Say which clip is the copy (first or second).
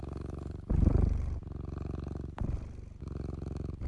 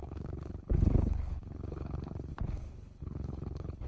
second